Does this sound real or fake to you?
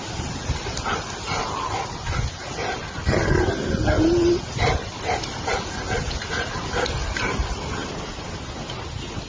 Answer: real